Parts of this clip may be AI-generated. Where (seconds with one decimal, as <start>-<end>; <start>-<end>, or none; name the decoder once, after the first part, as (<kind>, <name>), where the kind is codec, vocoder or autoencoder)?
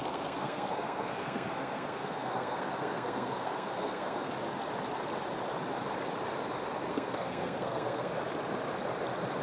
0.0-4.3 (codec, SNAC); 6.9-8.1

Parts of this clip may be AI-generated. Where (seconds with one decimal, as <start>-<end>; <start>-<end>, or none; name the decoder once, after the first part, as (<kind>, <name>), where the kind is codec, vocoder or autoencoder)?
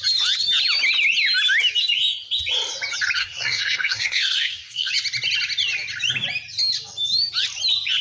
3.2-4.9 (codec, SNAC)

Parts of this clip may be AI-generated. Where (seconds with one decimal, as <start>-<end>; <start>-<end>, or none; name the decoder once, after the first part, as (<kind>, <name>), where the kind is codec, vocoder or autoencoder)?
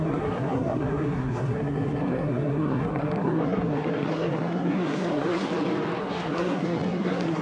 0.0-5.5 (codec, SNAC); 6.0-7.4